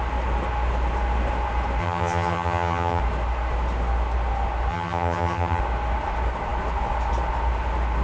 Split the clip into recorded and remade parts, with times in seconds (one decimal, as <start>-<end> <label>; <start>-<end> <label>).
0.0-1.8 recorded; 1.8-3.0 remade; 3.0-4.7 recorded; 4.7-5.6 remade; 5.6-8.0 recorded